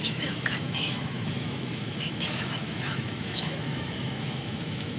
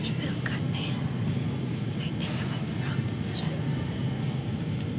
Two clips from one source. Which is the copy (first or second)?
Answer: first